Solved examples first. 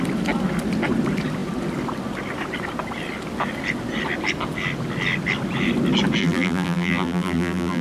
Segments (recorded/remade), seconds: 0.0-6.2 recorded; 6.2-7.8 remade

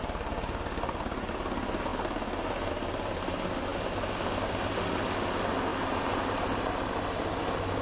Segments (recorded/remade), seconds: 0.0-5.7 recorded; 5.7-6.9 remade; 6.9-7.8 recorded

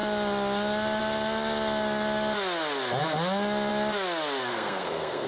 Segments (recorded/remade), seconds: 0.0-4.5 recorded; 4.5-5.3 remade

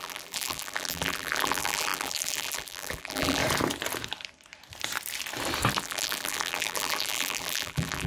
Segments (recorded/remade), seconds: 0.0-3.4 remade; 3.4-5.8 recorded; 5.8-8.1 remade

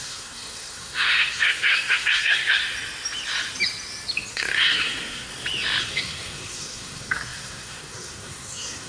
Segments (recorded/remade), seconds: 0.0-2.6 remade; 2.6-4.3 recorded; 4.3-5.3 remade; 5.3-5.8 recorded; 5.8-8.9 remade